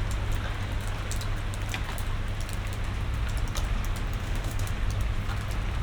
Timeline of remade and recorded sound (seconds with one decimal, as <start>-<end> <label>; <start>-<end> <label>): 0.0-4.2 recorded; 4.2-4.7 remade; 4.7-5.8 recorded